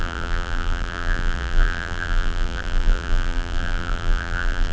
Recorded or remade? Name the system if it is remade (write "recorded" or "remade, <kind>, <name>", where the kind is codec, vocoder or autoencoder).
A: remade, vocoder, BigVGAN v2